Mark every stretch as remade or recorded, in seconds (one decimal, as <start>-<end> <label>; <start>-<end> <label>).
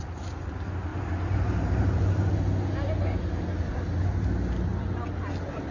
0.0-0.9 recorded; 0.9-2.3 remade; 2.3-5.7 recorded